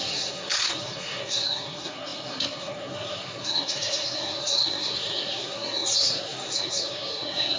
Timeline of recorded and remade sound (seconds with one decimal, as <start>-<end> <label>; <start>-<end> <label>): 0.0-7.6 remade